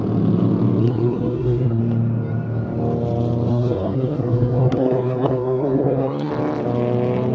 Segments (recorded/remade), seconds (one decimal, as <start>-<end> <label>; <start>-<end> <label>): 0.0-0.8 recorded; 0.8-1.8 remade; 1.8-3.5 recorded; 3.5-6.3 remade; 6.3-7.3 recorded

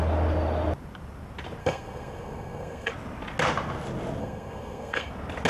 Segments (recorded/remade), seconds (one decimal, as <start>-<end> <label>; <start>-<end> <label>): 0.0-1.6 recorded; 1.6-2.9 remade; 2.9-4.2 recorded; 4.2-5.1 remade; 5.1-5.5 recorded

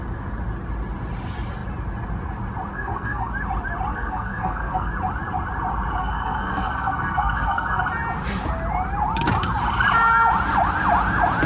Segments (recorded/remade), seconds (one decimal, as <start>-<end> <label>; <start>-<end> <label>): 0.0-2.7 recorded; 2.7-3.3 remade; 3.3-3.9 recorded; 3.9-4.9 remade; 4.9-6.0 recorded; 6.0-7.8 remade; 7.8-11.5 recorded

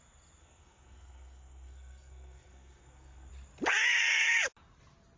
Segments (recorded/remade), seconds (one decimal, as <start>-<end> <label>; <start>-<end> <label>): 0.0-0.4 recorded; 0.4-3.3 remade; 3.3-5.2 recorded

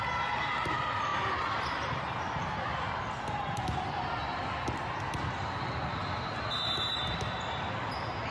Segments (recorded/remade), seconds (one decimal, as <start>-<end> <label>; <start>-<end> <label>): 0.0-8.3 recorded

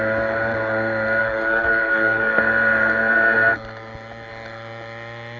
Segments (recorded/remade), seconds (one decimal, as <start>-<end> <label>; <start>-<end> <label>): 0.0-1.2 recorded; 1.2-2.4 remade; 2.4-5.4 recorded

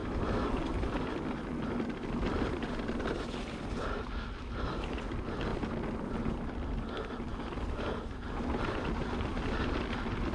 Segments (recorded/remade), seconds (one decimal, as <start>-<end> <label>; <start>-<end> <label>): 0.0-10.3 recorded

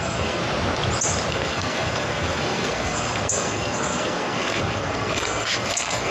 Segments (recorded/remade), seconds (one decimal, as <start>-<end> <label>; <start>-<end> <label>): 0.0-0.4 remade; 0.4-1.3 recorded; 1.3-6.1 remade